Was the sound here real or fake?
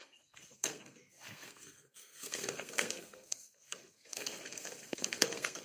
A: fake